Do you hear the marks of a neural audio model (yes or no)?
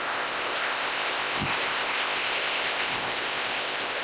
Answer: yes